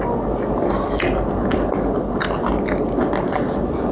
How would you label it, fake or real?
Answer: real